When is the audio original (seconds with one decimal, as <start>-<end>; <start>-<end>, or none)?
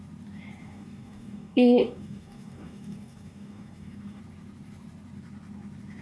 0.0-0.6; 4.2-6.0